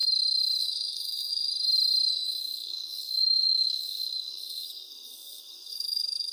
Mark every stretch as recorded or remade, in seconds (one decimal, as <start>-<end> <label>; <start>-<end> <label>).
0.0-0.6 recorded; 0.6-1.5 remade; 1.5-2.1 recorded; 2.1-6.3 remade